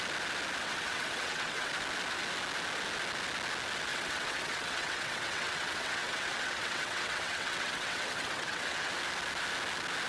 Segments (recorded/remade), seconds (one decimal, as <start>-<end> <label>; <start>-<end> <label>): 0.0-0.6 recorded; 0.6-1.7 remade; 1.7-3.9 recorded; 3.9-8.9 remade; 8.9-10.1 recorded